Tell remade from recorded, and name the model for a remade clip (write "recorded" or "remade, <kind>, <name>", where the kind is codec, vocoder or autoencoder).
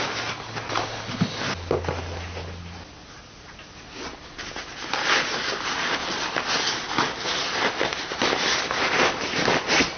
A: recorded